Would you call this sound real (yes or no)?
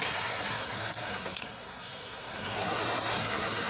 no